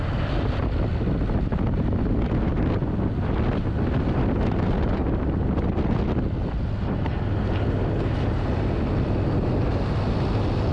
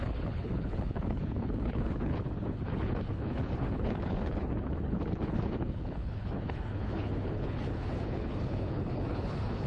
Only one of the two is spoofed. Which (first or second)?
second